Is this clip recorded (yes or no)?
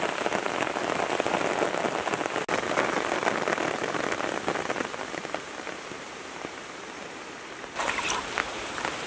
yes